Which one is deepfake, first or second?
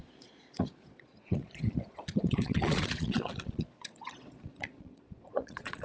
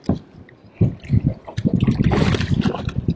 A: first